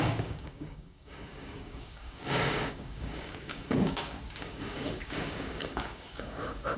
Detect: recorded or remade remade